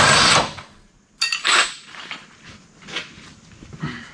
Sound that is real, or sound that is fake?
real